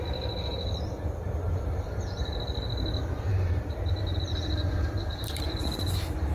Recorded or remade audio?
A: remade